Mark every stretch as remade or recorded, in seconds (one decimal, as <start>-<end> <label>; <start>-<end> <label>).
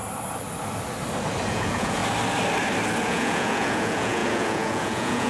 0.0-1.5 recorded; 1.5-2.0 remade; 2.0-3.0 recorded; 3.0-5.3 remade